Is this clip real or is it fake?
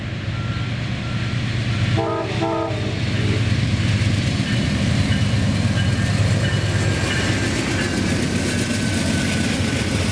real